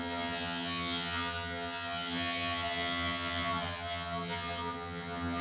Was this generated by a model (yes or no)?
yes